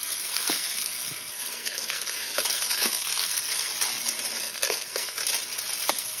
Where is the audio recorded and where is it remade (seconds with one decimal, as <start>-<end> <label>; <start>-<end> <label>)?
0.0-3.7 remade; 3.7-4.4 recorded; 4.4-5.2 remade; 5.2-5.8 recorded; 5.8-6.2 remade